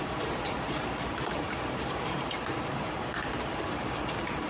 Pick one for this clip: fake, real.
fake